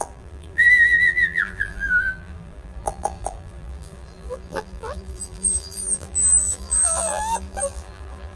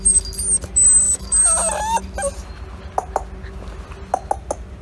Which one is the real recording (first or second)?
second